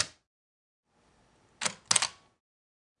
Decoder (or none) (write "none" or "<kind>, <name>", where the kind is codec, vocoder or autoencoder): none